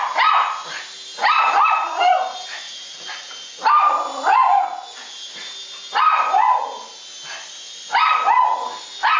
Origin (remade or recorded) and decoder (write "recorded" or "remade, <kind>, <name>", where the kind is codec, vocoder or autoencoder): recorded